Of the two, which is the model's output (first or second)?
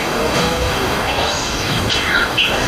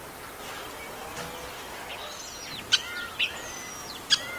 first